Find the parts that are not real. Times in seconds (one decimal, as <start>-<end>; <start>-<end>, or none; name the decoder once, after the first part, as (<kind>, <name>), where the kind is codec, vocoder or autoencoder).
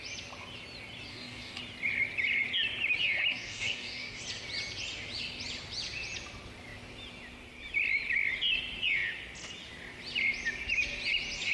1.1-1.6 (codec, DAC); 3.3-4.2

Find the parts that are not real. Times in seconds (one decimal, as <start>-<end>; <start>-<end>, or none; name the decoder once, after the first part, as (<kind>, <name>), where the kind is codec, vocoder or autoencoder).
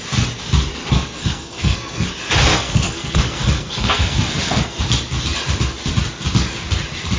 0.7-2.1 (codec, SNAC); 2.5-4.8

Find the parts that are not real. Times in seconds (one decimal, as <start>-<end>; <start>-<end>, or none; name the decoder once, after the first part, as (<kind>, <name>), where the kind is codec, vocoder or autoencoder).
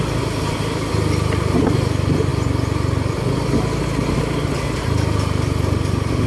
none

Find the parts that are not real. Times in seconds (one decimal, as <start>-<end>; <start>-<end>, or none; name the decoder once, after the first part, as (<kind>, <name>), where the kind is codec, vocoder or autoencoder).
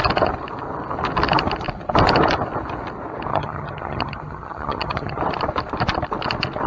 3.3-5.2 (vocoder, HiFi-GAN)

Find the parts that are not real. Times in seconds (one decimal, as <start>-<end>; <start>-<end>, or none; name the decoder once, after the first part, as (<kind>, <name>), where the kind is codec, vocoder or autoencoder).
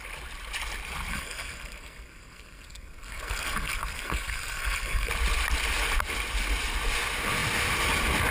1.1-5.1 (codec, SNAC)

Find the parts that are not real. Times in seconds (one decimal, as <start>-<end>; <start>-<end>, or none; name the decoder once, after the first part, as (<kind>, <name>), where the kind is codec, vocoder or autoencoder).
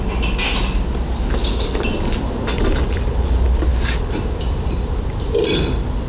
none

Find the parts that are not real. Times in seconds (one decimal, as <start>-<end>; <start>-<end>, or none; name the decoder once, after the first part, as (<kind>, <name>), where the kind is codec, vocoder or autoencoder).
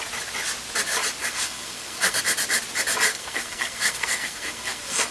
1.2-2.2 (codec, SNAC); 3.1-5.1